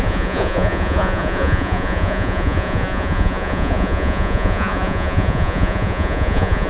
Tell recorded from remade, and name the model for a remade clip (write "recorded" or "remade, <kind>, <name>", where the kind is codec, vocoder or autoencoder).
remade, vocoder, Vocos